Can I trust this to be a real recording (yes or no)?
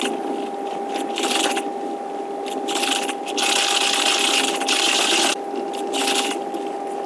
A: yes